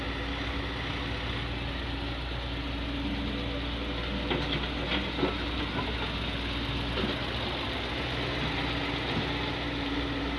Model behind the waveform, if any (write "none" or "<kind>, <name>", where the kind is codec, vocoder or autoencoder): none